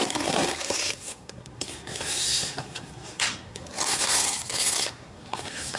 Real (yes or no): no